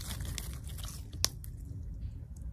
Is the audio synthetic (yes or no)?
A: no